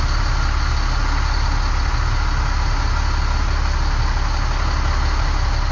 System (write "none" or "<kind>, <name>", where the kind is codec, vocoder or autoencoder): none